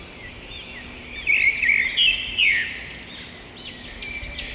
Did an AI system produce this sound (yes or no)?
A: no